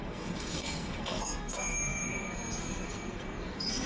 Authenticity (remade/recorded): remade